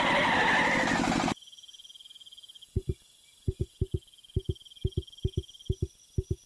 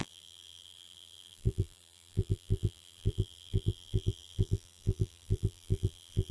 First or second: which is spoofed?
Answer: second